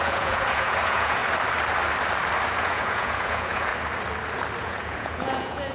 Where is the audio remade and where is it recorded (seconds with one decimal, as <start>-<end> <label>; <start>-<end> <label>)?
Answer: 0.0-1.2 remade; 1.2-2.5 recorded; 2.5-3.7 remade; 3.7-4.6 recorded; 4.6-5.7 remade